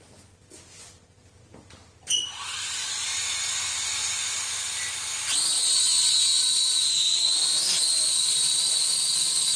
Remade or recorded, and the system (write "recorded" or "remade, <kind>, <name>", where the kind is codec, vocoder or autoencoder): recorded